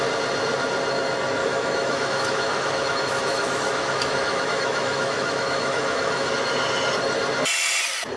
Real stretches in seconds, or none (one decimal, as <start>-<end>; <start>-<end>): 0.0-1.4; 6.3-8.2

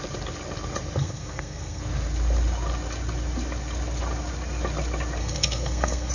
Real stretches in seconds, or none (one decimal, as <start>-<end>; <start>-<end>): 0.0-1.0; 1.8-5.2

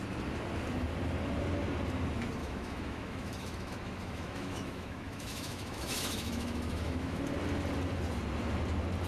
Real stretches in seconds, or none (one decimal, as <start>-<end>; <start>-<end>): 0.0-2.4; 7.2-9.1

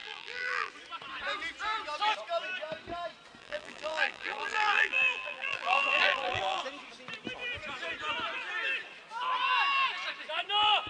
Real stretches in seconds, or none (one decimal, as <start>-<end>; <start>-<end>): 0.7-3.4; 6.6-10.9